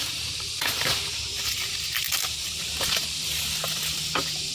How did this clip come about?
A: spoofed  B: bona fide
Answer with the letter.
A